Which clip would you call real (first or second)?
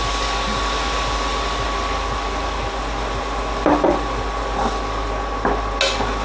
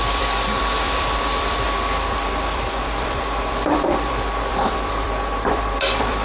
first